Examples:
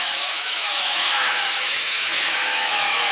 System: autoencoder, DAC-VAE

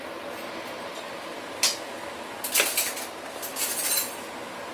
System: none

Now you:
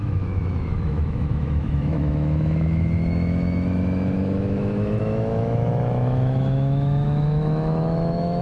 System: autoencoder, DAC-VAE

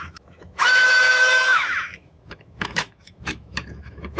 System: autoencoder, DAC-VAE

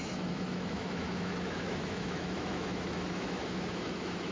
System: autoencoder, DAC-VAE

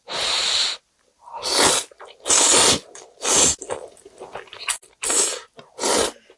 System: none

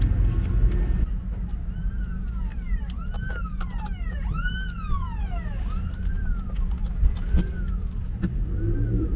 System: none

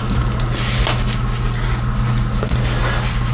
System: none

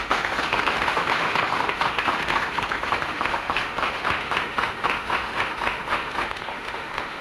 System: autoencoder, DAC-VAE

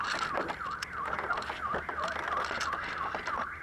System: none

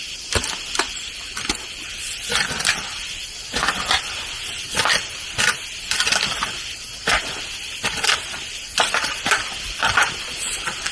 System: none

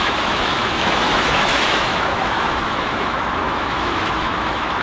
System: autoencoder, DAC-VAE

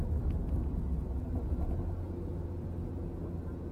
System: none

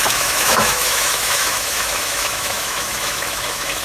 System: autoencoder, DAC-VAE